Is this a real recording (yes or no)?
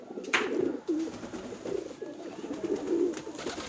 yes